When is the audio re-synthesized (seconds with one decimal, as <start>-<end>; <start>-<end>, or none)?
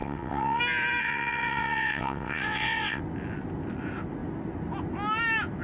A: 0.0-0.6; 1.0-3.0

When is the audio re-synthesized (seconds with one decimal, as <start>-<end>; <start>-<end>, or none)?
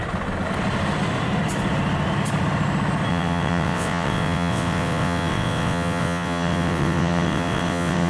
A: 3.1-8.1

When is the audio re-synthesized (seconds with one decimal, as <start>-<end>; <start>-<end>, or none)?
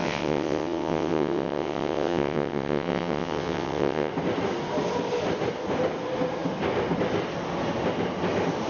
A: 0.0-4.1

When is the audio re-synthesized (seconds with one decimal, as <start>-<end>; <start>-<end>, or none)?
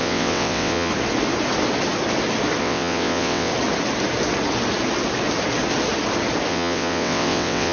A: 0.0-0.9; 2.6-3.5; 6.5-7.7